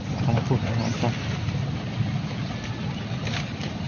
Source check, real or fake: real